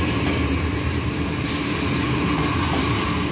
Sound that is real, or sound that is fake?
real